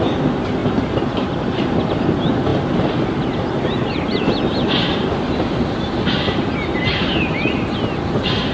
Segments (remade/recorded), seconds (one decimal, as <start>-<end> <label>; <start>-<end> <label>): 0.0-8.5 recorded